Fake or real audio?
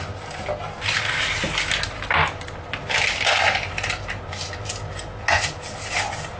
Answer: real